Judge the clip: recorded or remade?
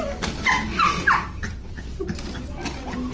recorded